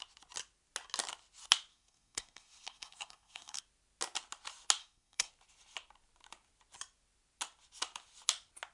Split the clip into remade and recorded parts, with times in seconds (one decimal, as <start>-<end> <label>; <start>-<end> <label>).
0.0-1.7 recorded; 1.7-3.6 remade; 3.6-4.8 recorded; 4.8-5.3 remade; 5.3-8.7 recorded